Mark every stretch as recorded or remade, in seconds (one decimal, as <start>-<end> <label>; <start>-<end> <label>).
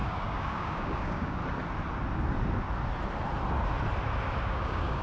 0.0-1.4 remade; 1.4-4.4 recorded; 4.4-5.0 remade